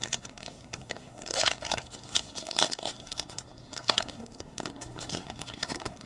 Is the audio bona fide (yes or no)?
no